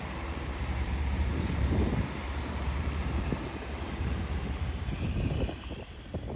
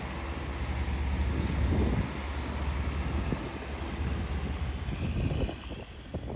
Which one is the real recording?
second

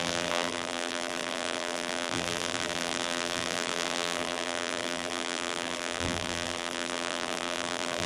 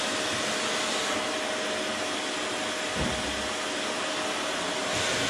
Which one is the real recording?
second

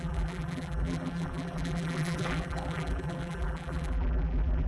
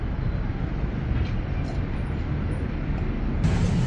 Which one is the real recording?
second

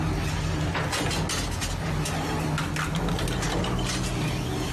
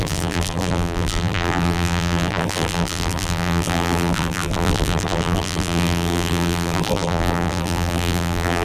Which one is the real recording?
first